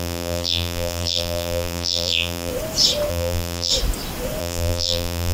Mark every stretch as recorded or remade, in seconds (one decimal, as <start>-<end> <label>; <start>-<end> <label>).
0.0-2.5 remade; 2.5-3.1 recorded; 3.1-3.7 remade; 3.7-4.4 recorded; 4.4-5.3 remade